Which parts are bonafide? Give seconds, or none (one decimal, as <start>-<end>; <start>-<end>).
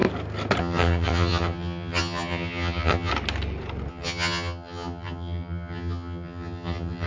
0.0-0.6; 3.1-3.9